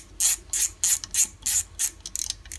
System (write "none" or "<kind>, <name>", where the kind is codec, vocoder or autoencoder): none